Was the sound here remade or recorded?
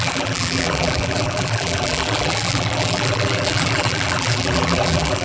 remade